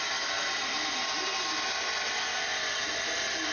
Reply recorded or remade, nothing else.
recorded